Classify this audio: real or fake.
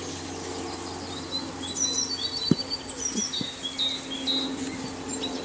real